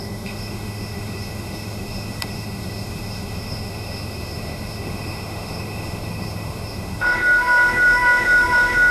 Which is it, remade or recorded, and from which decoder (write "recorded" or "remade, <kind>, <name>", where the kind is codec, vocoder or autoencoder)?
remade, autoencoder, DAC-VAE